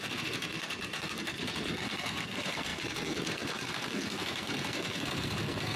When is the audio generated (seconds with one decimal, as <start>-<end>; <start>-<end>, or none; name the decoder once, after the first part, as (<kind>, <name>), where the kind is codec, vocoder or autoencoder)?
0.0-5.8 (codec, SNAC)